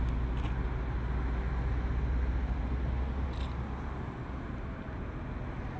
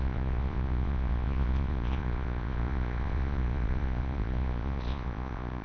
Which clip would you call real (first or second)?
first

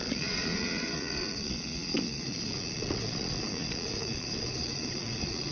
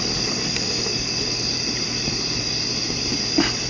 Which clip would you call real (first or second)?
second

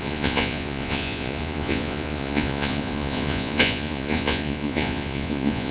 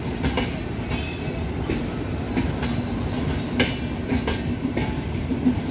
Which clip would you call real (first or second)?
second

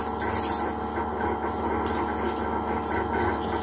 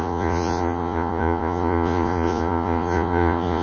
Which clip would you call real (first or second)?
first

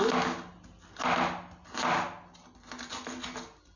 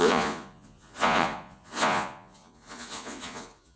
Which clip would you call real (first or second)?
first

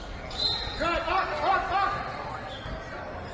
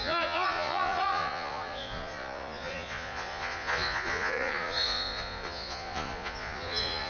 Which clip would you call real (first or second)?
first